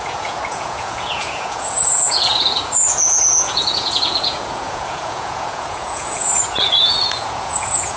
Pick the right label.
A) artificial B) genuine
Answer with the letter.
A